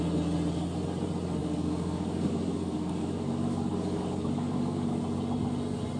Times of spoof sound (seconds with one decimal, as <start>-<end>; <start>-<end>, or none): 1.4-5.0